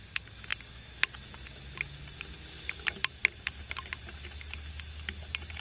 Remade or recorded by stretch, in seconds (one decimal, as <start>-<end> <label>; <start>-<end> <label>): 0.0-5.6 recorded